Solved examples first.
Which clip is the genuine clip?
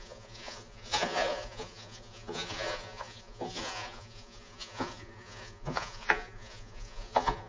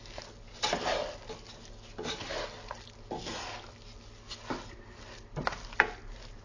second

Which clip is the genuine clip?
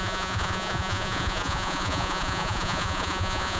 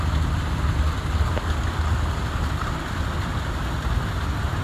second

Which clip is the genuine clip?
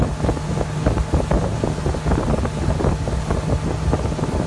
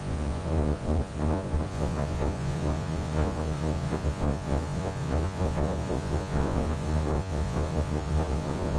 first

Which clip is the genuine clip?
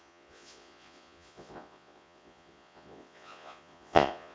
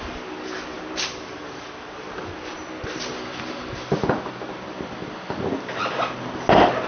second